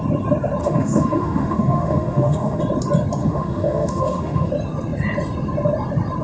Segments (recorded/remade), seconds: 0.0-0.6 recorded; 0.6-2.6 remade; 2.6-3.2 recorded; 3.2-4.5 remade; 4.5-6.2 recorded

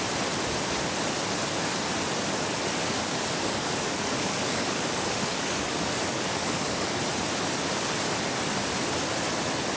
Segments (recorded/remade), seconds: 0.0-2.8 recorded; 2.8-7.0 remade; 7.0-9.8 recorded

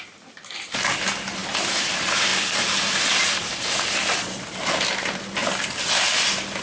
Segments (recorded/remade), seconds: 0.0-6.6 recorded